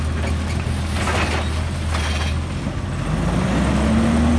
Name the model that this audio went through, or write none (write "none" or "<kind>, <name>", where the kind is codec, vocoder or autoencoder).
none